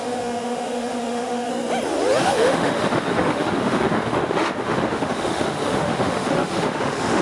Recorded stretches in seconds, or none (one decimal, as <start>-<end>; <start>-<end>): 1.5-2.2